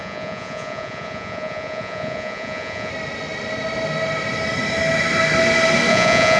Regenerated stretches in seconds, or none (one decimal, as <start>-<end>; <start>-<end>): 0.0-2.9; 5.9-6.4